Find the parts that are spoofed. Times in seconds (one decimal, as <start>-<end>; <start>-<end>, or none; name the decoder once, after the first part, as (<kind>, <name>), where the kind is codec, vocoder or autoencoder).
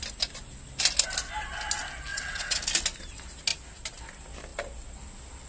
2.1-2.6 (vocoder, WaveNeXt)